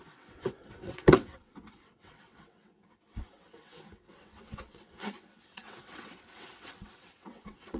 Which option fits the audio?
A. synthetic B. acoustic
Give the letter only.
A